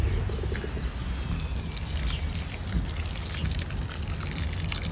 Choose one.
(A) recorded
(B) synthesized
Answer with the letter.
A